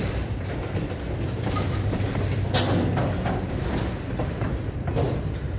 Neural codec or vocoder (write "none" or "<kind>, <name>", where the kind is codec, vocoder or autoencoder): none